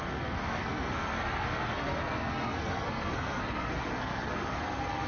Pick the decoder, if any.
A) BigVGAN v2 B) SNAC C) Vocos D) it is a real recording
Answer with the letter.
B